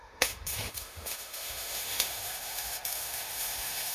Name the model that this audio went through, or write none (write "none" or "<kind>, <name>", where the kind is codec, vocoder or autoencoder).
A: autoencoder, DAC-VAE